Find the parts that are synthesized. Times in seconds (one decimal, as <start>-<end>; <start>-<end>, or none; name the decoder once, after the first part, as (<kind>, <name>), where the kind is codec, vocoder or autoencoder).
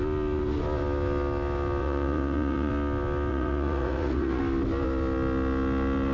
1.8-2.7 (vocoder, Vocos); 3.3-4.4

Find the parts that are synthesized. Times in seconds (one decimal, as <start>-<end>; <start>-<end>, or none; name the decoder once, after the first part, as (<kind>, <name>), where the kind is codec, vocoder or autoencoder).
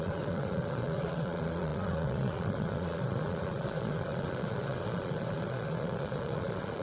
0.0-6.8 (vocoder, Vocos)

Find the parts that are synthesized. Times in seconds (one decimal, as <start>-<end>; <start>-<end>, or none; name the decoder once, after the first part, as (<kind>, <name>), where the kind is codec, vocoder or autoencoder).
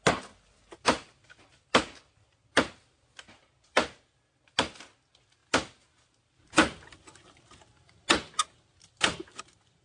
none